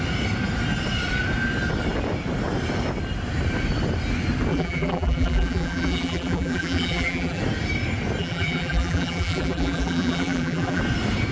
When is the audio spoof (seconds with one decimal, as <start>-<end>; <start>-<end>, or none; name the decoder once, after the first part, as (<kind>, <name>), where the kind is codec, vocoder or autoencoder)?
4.5-7.4 (vocoder, BigVGAN v2); 8.2-10.8